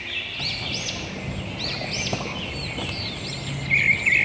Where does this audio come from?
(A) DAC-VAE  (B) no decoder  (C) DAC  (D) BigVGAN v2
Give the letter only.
B